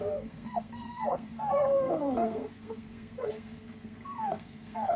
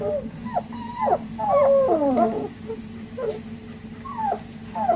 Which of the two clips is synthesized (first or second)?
first